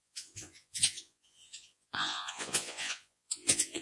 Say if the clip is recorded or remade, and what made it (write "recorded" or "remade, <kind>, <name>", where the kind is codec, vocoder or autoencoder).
remade, vocoder, Vocos